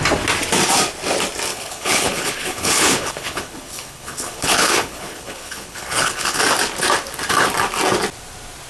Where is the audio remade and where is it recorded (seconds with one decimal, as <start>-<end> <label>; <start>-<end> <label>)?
0.0-1.5 recorded; 1.5-6.4 remade; 6.4-8.7 recorded